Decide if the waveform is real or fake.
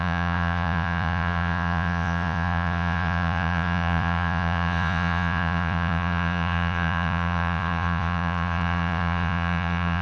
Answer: fake